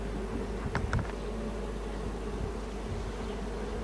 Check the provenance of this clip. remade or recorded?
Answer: recorded